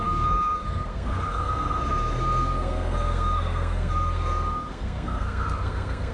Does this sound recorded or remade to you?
remade